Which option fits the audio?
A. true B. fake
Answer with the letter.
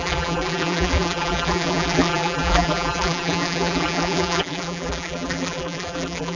B